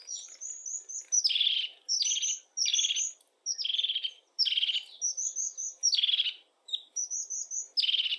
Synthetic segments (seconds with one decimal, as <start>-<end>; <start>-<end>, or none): none